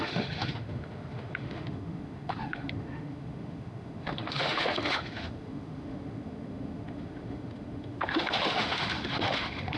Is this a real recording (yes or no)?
no